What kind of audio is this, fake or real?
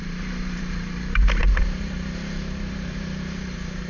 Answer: fake